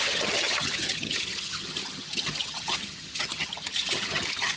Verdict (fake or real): fake